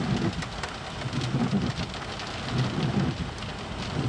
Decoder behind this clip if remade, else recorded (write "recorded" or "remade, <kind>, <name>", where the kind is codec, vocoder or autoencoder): recorded